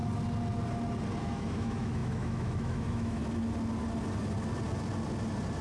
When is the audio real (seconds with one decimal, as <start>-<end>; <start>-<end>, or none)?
0.0-1.2; 3.2-5.6